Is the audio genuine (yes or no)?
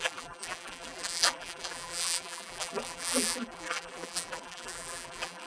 no